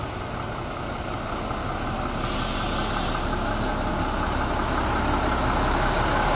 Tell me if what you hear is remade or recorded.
recorded